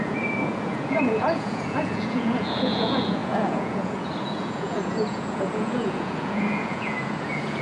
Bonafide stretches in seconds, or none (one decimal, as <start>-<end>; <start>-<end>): none

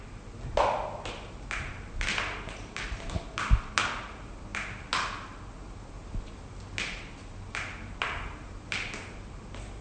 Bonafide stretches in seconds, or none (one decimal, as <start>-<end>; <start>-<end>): 0.0-9.8

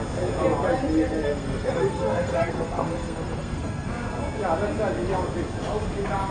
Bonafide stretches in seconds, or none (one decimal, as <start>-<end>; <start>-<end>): 0.0-0.8; 3.9-6.3

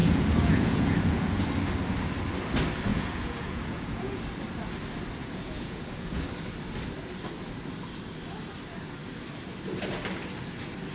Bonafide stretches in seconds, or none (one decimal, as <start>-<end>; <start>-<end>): 1.4-2.9; 4.2-5.2; 6.2-10.9

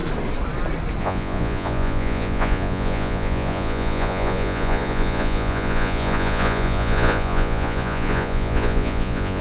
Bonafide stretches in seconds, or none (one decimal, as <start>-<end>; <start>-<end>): 0.0-1.0

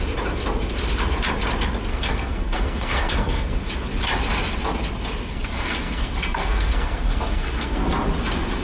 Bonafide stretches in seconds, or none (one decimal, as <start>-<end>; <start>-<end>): 0.0-1.9; 3.6-5.3; 7.8-8.6

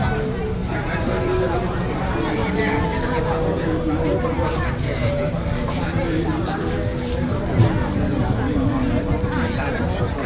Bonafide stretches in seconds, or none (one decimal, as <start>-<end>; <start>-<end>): 0.0-0.6; 1.7-2.4; 7.4-10.3